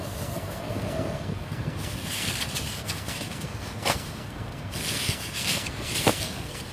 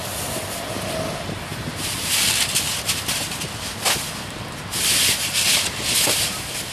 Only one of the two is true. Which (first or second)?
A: second